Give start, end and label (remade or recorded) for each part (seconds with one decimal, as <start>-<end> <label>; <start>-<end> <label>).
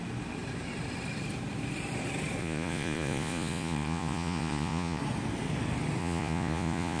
0.0-2.4 recorded; 2.4-5.0 remade; 5.0-6.0 recorded; 6.0-7.0 remade